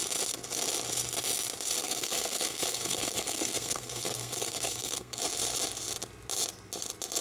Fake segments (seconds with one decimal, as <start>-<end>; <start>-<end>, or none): 1.8-5.2